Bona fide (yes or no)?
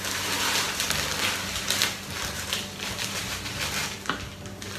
yes